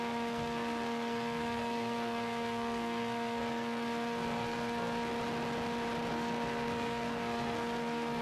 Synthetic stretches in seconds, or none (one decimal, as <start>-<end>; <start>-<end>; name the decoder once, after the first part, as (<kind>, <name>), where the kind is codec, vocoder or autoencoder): 0.0-5.1 (codec, SNAC); 6.1-8.2